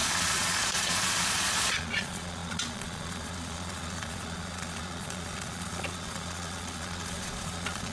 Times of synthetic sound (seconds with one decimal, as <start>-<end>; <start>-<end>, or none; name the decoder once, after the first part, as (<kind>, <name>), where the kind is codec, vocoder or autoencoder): 0.0-7.9 (vocoder, Vocos)